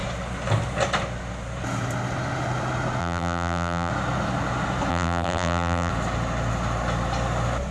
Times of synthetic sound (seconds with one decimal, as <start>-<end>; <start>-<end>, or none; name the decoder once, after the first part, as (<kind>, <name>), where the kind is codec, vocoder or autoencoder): 3.0-3.9 (vocoder, BigVGAN v2); 4.9-5.9